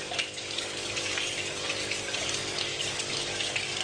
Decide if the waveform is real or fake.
fake